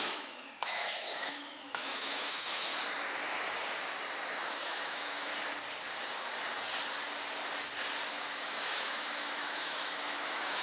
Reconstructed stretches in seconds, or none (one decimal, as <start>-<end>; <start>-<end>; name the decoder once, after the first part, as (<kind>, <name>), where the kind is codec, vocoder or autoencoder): 0.0-2.7 (autoencoder, DAC-VAE); 4.3-5.3; 8.1-10.6